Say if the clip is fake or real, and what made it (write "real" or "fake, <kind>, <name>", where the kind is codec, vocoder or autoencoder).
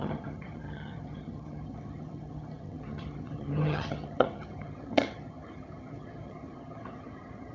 fake, vocoder, HiFi-GAN